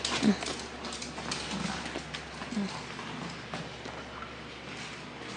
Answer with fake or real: real